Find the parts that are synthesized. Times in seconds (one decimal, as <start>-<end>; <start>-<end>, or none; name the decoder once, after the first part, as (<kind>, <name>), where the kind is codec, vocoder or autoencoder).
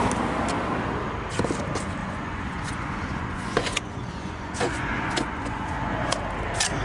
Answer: 2.0-6.1 (vocoder, Vocos)